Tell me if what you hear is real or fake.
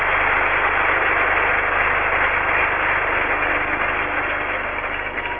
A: real